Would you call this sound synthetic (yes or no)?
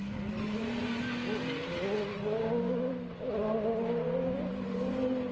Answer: no